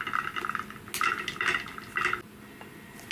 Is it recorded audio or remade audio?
recorded